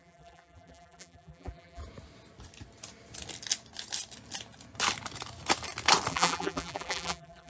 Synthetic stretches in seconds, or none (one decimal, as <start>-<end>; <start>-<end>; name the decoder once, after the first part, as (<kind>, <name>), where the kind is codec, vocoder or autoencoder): 0.0-1.8 (vocoder, BigVGAN v2); 6.1-7.5